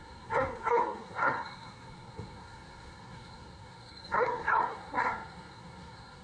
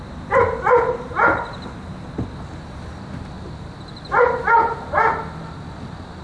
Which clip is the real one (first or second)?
second